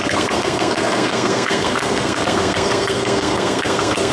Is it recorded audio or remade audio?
remade